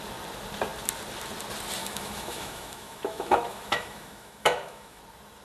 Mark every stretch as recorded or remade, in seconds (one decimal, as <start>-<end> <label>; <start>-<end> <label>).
0.0-1.8 recorded; 1.8-5.0 remade; 5.0-5.4 recorded